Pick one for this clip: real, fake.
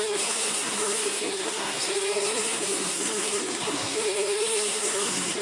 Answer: fake